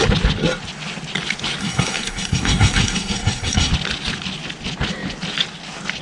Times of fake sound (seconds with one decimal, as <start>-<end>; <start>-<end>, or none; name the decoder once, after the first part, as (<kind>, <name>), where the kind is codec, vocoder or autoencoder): 1.6-3.7 (codec, SNAC)